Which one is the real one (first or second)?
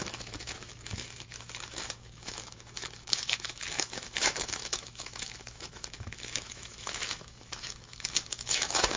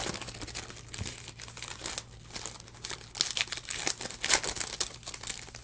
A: second